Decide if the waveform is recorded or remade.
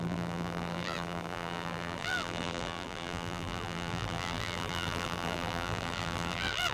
remade